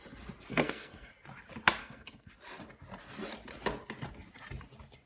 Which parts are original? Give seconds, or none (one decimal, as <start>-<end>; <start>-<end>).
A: 0.0-0.5; 1.1-1.8; 2.3-5.1

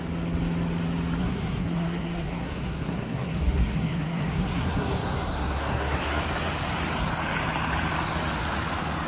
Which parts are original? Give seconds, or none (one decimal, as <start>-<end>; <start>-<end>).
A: 0.0-1.2; 6.2-9.1

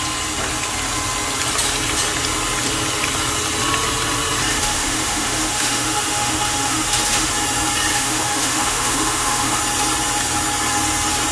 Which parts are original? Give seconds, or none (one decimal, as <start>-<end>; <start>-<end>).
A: 0.0-4.5; 7.3-7.9; 9.6-11.3

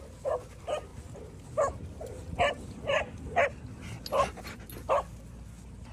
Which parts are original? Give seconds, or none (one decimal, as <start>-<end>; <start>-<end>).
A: 0.0-5.9

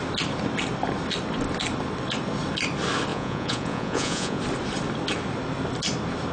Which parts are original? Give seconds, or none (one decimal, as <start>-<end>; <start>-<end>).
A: 0.0-3.1; 4.4-6.3